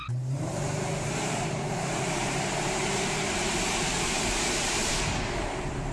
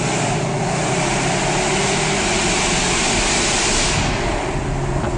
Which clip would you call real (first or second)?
second